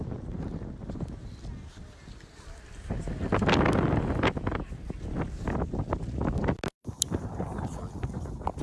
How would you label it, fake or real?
real